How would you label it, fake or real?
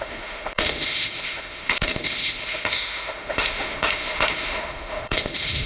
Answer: fake